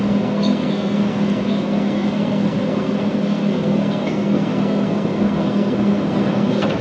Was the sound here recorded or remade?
remade